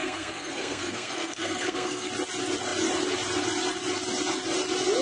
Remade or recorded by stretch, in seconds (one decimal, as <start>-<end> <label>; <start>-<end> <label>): 0.0-2.1 remade; 2.1-5.0 recorded